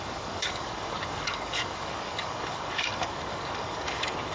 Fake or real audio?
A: fake